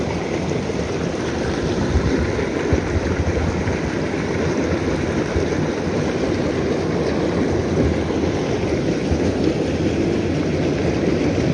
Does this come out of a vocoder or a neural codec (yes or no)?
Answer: no